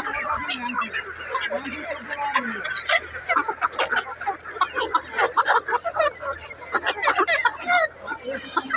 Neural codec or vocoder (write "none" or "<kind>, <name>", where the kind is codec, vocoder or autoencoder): none